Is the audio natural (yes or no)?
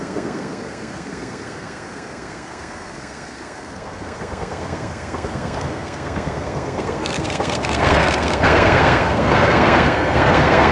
no